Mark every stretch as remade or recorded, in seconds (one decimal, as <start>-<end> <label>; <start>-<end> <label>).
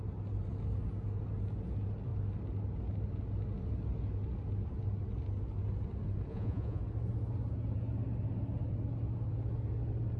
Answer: 0.0-6.3 recorded; 6.3-6.8 remade; 6.8-10.2 recorded